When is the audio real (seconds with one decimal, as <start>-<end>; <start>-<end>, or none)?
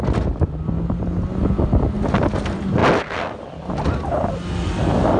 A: 0.0-5.2